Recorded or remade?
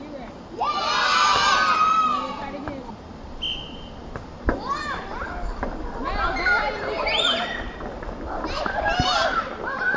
recorded